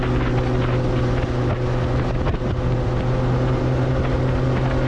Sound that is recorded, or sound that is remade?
recorded